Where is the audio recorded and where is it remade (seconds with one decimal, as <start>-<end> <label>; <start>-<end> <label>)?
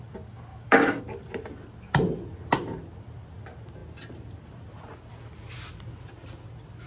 0.0-0.5 recorded; 0.5-1.0 remade; 1.0-6.9 recorded